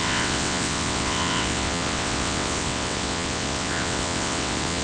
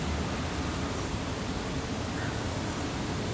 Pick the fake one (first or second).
first